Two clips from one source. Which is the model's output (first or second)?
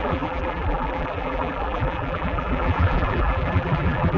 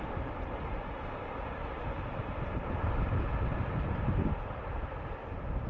first